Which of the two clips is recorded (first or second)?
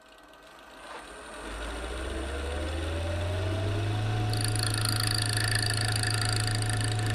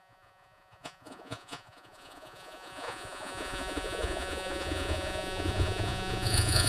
first